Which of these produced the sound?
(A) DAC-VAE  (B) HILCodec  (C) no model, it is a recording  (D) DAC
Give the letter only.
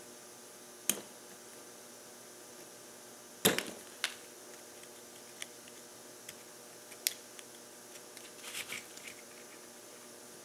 C